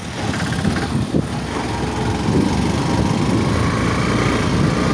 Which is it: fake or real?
real